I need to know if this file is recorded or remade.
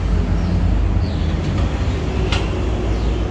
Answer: recorded